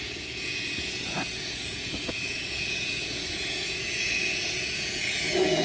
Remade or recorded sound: remade